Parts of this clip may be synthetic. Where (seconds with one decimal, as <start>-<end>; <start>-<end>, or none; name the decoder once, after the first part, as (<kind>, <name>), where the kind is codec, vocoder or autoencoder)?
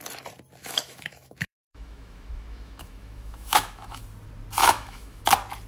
0.6-4.0 (autoencoder, DAC-VAE); 4.6-5.2